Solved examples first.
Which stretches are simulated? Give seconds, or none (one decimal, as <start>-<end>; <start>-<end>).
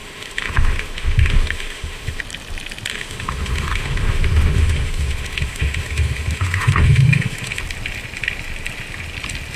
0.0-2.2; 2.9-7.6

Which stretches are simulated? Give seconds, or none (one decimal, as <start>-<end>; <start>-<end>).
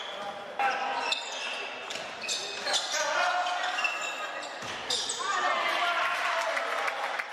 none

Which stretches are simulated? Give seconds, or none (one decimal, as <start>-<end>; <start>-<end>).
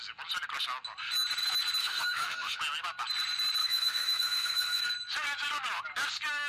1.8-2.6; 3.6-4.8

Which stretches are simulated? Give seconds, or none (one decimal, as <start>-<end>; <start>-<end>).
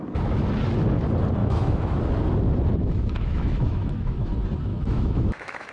1.4-2.0; 2.8-4.3; 4.7-5.7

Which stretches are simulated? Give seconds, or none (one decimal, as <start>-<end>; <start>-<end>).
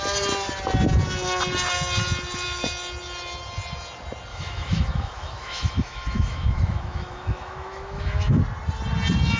4.3-8.4